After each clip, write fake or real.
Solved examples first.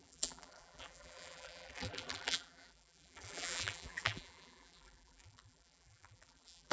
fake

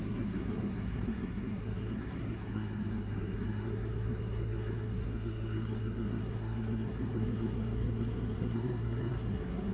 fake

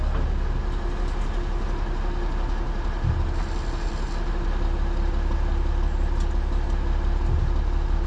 real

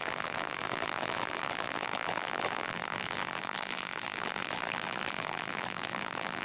fake